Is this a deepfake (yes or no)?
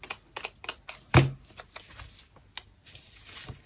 no